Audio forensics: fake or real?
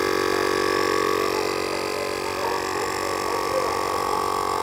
real